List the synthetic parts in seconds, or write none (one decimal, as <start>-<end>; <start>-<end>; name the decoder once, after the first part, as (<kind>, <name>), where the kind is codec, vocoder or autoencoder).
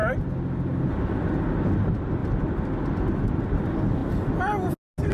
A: 2.2-3.4 (vocoder, BigVGAN v2)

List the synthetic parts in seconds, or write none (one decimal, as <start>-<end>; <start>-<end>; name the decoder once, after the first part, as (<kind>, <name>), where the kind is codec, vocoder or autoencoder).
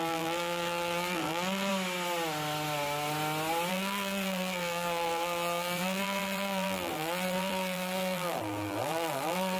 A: 0.0-1.7 (vocoder, BigVGAN v2); 3.7-9.6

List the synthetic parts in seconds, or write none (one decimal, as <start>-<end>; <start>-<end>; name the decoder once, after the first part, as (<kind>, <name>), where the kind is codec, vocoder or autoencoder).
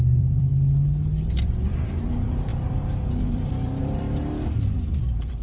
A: 0.0-0.5 (vocoder, BigVGAN v2); 1.4-5.4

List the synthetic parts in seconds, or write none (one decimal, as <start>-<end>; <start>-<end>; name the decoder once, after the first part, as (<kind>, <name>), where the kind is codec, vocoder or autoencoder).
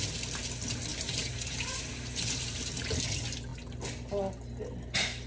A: 0.9-2.8 (vocoder, BigVGAN v2)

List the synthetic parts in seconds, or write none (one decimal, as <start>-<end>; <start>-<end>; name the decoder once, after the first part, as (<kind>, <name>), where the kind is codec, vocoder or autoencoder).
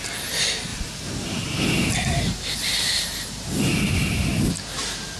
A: 0.7-3.8 (vocoder, BigVGAN v2)